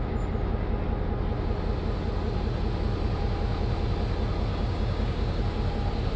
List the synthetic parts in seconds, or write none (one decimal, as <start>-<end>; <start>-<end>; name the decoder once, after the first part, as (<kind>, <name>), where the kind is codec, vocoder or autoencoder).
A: 4.5-5.4 (codec, DAC)

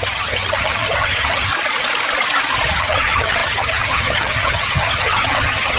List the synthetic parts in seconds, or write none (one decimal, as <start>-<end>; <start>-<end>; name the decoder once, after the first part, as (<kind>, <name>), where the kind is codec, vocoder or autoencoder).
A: 0.0-1.5 (vocoder, HiFi-GAN); 2.8-5.8

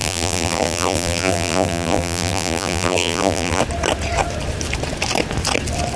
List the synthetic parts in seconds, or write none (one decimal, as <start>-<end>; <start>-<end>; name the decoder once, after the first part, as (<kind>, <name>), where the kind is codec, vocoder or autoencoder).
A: 0.0-3.6 (vocoder, BigVGAN v2)